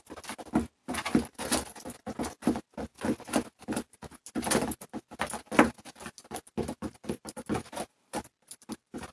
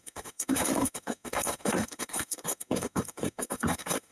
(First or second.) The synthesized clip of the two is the second